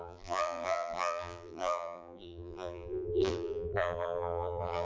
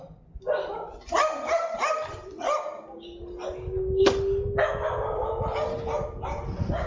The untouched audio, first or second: second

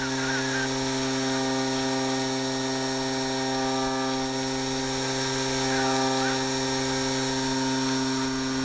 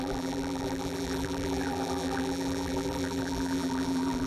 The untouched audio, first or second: first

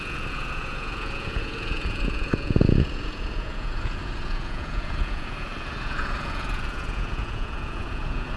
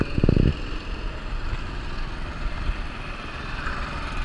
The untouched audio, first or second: second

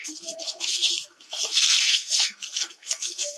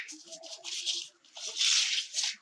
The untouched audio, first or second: second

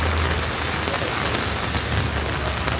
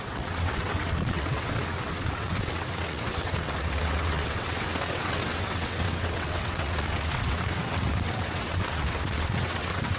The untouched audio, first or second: first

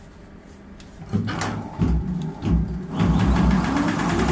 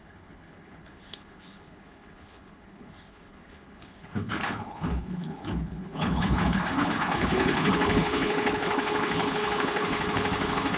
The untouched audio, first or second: first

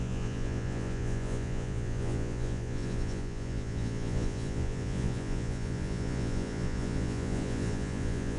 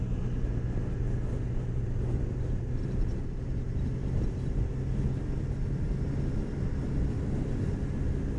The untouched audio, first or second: second